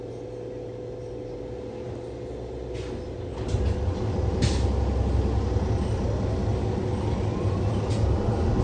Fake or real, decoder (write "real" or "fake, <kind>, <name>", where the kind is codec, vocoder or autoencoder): real